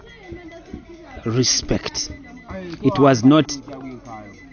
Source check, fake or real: real